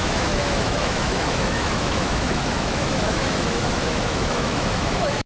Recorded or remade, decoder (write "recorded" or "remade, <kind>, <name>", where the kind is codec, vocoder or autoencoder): remade, autoencoder, DAC-VAE